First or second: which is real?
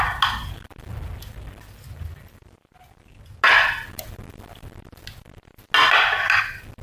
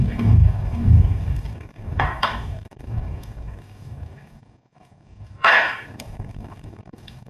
first